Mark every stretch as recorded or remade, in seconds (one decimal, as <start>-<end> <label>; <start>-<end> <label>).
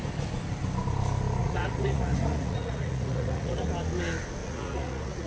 0.0-1.4 recorded; 1.4-3.7 remade; 3.7-4.4 recorded; 4.4-5.3 remade